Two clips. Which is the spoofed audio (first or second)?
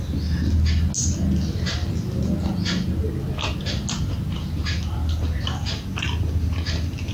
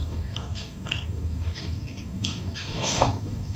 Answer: second